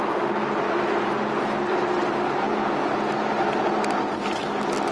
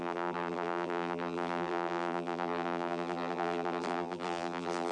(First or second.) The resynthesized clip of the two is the second